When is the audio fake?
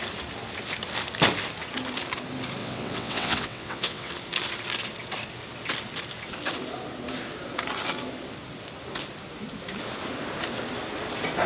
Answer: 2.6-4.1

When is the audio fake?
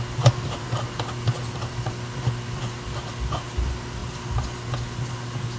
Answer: none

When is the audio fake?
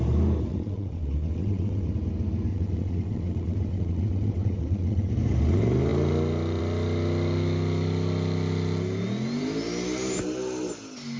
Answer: 0.5-1.9; 2.5-5.1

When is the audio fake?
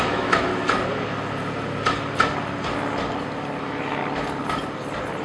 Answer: 0.0-0.5; 3.6-4.0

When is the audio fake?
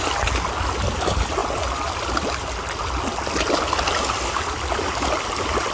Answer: none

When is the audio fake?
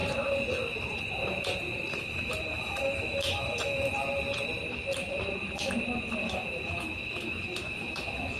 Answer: 1.9-3.9; 6.2-8.4